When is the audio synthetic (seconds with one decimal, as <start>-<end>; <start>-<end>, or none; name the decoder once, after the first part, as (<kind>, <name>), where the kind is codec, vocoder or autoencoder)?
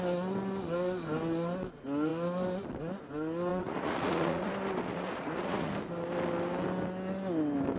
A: 3.5-4.5 (vocoder, Vocos); 4.9-5.7